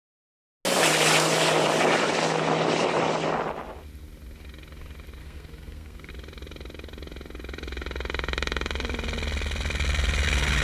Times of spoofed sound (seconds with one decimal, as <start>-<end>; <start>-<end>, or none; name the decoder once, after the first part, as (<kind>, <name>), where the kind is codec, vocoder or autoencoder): 5.2-6.1 (codec, SNAC)